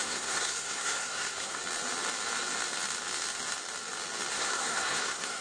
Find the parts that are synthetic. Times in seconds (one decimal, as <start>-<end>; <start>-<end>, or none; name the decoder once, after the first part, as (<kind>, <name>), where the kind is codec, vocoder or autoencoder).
0.0-1.6 (codec, SNAC); 4.3-5.4

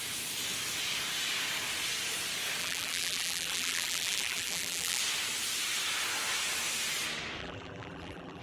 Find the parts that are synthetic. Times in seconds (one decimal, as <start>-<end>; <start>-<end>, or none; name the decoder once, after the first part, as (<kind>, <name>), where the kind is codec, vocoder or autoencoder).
2.6-5.0 (vocoder, BigVGAN v2); 7.4-8.4

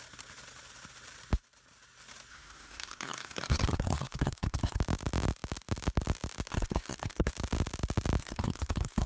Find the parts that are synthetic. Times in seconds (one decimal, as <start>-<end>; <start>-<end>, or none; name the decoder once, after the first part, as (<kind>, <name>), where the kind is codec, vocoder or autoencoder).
2.3-4.8 (codec, SNAC); 6.5-7.3; 8.2-9.1

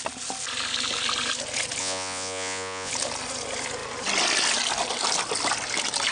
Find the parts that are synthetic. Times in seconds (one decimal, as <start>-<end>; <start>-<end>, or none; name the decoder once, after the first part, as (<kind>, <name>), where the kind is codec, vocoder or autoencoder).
1.8-2.9 (vocoder, Vocos)

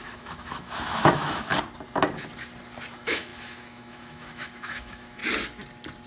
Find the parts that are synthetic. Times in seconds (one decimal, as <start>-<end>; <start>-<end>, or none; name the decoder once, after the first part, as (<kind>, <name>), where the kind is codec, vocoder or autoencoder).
0.0-1.5 (autoencoder, DAC-VAE); 2.9-5.2

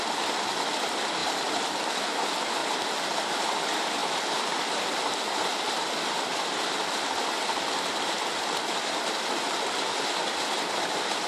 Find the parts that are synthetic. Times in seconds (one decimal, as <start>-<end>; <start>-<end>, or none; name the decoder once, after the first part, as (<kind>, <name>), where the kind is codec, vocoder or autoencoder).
0.0-11.3 (vocoder, BigVGAN v2)

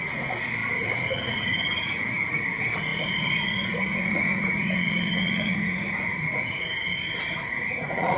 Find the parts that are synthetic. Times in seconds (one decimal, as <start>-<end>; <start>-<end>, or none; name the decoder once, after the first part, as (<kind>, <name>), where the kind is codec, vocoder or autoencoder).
0.0-6.7 (vocoder, Vocos); 7.3-8.2

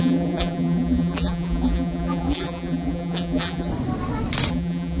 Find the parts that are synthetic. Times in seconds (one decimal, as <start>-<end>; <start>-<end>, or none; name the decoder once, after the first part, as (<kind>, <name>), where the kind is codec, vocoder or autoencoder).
0.0-3.7 (vocoder, BigVGAN v2); 4.5-5.0